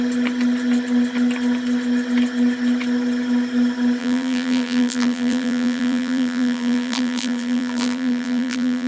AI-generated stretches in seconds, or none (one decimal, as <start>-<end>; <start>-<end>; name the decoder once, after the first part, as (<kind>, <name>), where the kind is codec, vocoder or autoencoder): 4.0-8.9 (vocoder, BigVGAN v2)